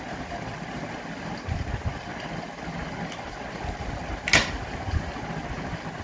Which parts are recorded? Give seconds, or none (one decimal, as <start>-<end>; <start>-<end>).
0.0-6.0

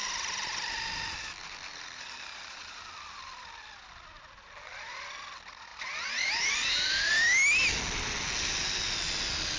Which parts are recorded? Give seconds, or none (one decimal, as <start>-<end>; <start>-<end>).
0.0-1.7; 2.8-5.7; 7.1-9.6